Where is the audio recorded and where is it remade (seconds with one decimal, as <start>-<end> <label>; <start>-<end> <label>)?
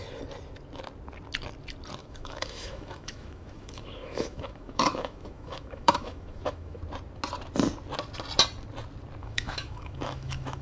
0.0-2.0 recorded; 2.0-6.8 remade; 6.8-9.2 recorded; 9.2-10.6 remade